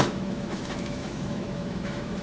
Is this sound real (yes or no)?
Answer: no